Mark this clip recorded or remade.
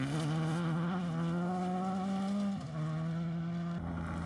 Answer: recorded